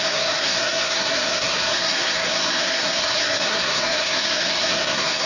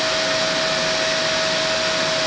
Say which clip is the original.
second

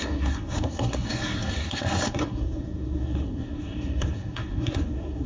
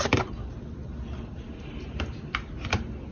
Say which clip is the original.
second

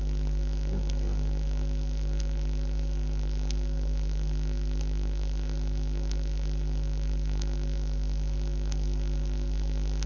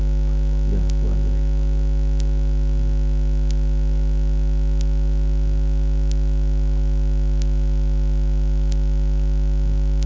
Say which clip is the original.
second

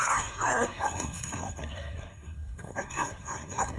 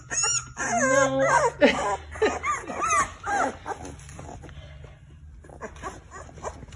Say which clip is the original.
second